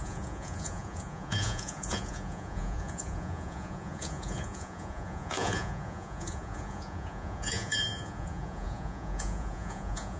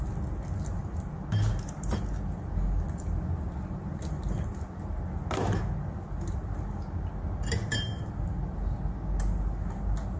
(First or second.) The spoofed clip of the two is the first